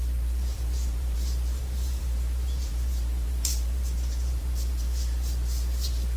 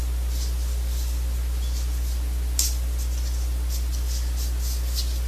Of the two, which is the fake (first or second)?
first